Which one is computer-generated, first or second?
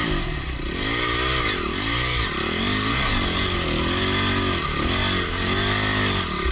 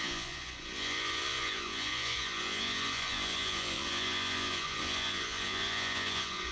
second